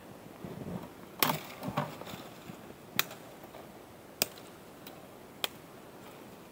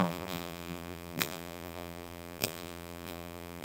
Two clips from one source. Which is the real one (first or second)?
first